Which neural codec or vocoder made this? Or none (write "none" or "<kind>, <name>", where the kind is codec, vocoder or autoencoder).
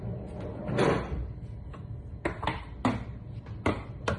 none